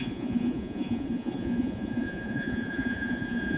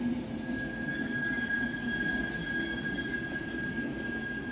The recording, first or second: second